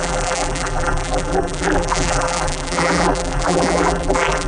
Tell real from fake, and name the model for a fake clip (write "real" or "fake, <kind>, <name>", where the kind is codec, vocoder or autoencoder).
fake, vocoder, BigVGAN v2